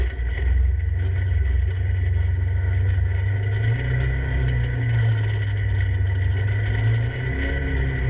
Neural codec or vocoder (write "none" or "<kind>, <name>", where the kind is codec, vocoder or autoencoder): none